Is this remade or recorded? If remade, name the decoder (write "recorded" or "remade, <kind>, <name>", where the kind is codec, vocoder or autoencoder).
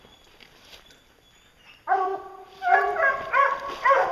recorded